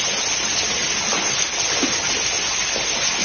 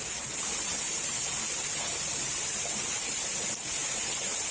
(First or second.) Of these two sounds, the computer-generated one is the second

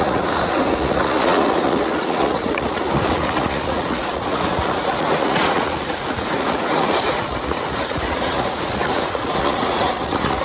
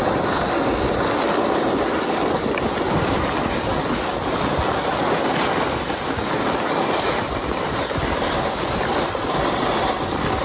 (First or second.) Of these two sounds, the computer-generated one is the first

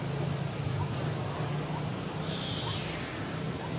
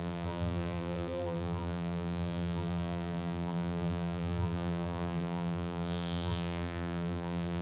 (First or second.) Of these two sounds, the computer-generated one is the second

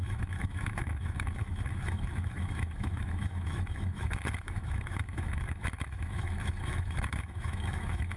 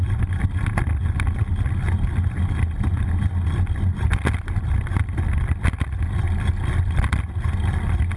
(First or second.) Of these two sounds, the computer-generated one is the first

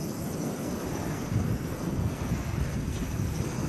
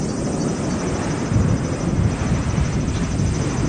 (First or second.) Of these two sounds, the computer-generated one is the first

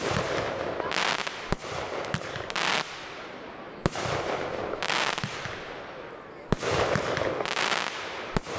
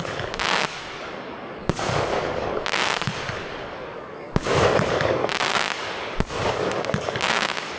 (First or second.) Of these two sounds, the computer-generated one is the second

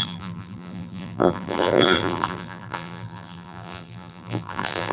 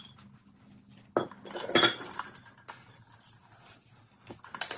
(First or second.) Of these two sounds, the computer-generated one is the first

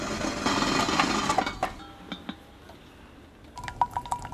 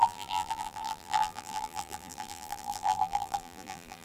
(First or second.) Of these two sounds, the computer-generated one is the second